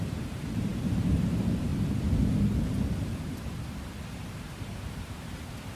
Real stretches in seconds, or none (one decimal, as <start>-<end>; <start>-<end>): 1.7-4.3